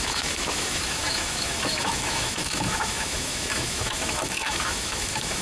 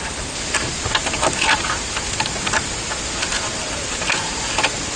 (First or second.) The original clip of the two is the second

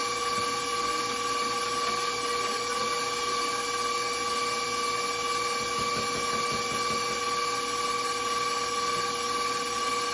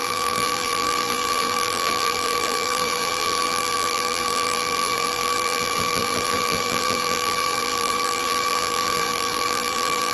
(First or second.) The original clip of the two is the first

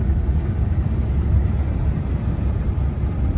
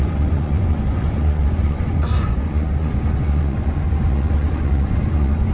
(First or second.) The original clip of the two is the first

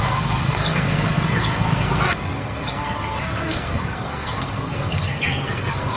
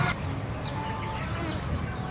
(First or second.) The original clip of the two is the second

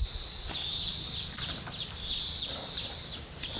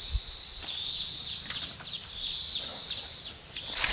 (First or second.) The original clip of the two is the first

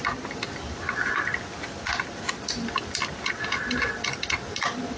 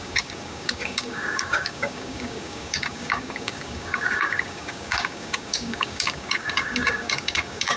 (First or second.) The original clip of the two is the first